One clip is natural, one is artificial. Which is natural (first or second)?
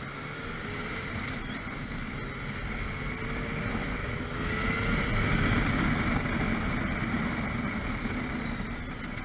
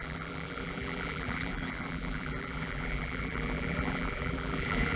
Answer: first